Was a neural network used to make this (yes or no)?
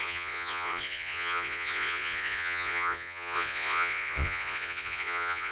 yes